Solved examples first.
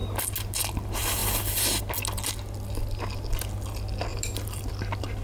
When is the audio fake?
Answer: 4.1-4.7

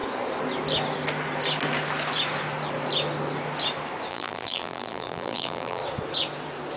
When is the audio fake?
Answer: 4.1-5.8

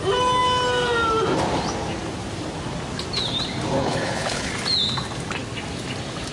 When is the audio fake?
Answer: 3.8-4.5

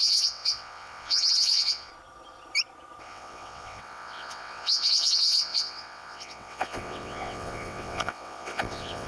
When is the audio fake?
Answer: 0.0-1.9; 3.0-9.1